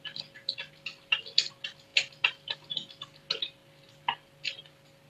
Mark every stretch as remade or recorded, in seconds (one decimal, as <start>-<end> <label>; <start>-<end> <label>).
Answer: 0.0-5.1 recorded